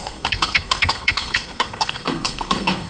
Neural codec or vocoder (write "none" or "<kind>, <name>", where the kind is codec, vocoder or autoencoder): codec, SNAC